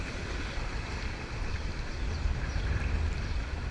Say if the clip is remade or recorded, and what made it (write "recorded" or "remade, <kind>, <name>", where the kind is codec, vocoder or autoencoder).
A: recorded